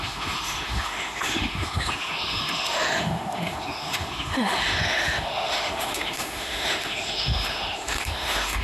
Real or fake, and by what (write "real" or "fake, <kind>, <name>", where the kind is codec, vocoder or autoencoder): fake, autoencoder, DAC-VAE